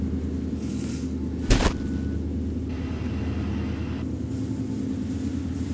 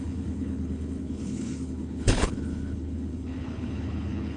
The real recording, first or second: first